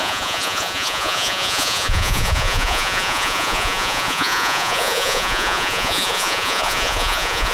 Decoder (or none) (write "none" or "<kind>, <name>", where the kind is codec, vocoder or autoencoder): vocoder, Vocos